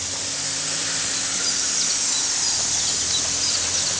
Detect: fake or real real